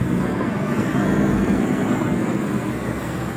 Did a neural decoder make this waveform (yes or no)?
yes